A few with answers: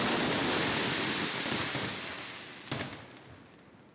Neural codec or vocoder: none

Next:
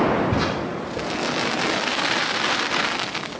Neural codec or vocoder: none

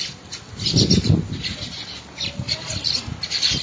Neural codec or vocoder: none